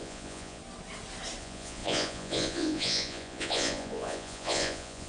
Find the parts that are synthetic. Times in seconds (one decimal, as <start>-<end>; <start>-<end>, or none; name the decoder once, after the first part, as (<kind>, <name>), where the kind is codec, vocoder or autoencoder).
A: 0.0-0.6 (vocoder, Vocos); 1.4-5.1